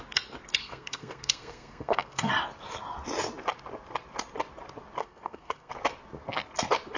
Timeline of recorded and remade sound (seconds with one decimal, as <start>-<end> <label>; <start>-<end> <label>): 0.0-0.6 recorded; 0.6-2.3 remade; 2.3-5.0 recorded; 5.0-5.7 remade; 5.7-7.0 recorded